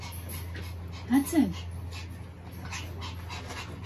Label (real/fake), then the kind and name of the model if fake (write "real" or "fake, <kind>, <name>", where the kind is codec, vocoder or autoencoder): real